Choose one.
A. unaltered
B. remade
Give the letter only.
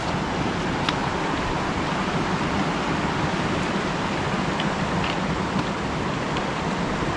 A